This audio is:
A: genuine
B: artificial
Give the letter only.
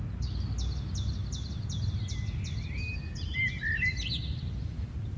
A